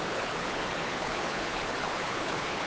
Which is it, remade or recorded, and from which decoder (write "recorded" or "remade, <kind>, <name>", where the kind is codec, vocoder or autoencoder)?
remade, codec, HILCodec